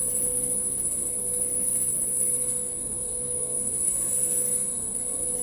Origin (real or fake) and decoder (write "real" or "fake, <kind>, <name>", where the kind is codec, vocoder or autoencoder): fake, codec, SNAC